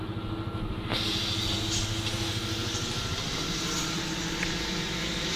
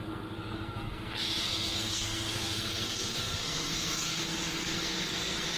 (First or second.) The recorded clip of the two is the first